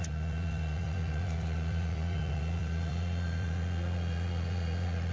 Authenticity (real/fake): fake